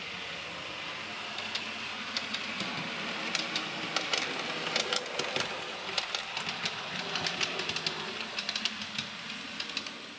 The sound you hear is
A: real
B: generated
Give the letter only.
A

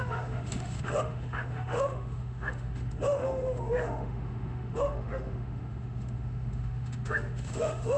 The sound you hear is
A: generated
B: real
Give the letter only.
A